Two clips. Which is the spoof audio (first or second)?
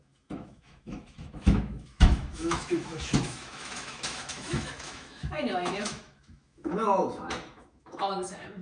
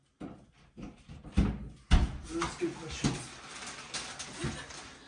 first